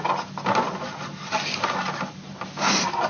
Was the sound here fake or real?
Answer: real